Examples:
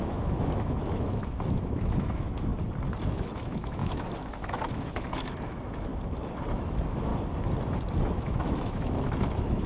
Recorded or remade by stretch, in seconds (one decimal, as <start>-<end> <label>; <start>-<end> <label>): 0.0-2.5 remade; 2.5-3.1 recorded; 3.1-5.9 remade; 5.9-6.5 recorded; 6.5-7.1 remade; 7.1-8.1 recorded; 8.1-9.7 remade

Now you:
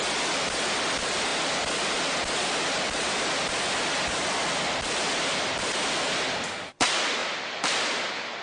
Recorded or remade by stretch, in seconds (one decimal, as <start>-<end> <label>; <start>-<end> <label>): 0.0-7.2 recorded; 7.2-7.7 remade; 7.7-8.4 recorded

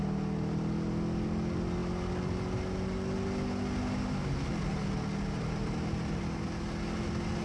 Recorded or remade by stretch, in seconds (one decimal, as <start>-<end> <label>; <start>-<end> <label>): 0.0-7.4 recorded

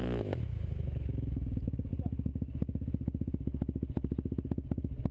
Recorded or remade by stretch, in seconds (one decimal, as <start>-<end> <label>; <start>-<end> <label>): 0.0-1.9 remade; 1.9-5.1 recorded

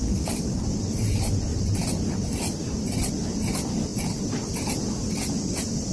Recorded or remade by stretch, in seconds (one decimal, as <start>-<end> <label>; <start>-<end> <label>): 0.0-1.5 recorded; 1.5-3.1 remade; 3.1-5.9 recorded

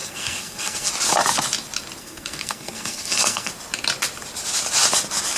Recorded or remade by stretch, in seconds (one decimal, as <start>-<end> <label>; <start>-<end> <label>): 0.0-0.9 remade; 0.9-2.0 recorded; 2.0-3.5 remade; 3.5-5.4 recorded